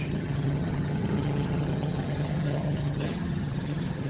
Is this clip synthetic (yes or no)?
yes